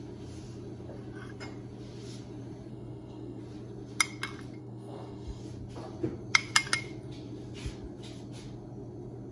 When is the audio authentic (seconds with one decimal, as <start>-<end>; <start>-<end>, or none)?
0.0-2.7; 3.4-4.6; 5.4-9.3